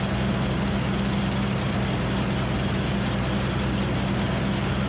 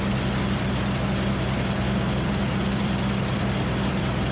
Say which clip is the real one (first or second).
first